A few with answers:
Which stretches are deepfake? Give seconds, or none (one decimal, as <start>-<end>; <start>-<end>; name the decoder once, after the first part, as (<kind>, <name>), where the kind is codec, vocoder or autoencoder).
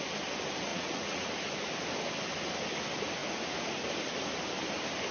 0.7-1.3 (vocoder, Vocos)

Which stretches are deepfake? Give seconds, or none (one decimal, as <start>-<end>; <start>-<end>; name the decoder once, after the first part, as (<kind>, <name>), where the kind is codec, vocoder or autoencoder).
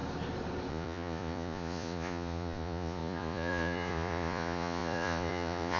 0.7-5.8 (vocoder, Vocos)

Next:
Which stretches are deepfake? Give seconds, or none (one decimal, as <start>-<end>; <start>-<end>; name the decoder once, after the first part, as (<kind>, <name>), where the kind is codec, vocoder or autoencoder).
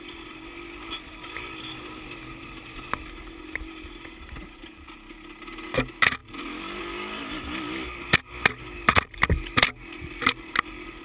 none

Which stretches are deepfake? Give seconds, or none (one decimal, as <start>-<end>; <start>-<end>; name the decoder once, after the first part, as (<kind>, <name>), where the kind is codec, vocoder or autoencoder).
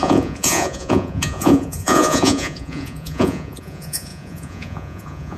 0.0-5.4 (vocoder, Vocos)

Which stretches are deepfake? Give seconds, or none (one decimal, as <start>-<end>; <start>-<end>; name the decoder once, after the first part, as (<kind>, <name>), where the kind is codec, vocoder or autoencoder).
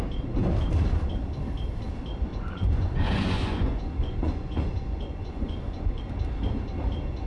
2.3-6.0 (vocoder, Vocos)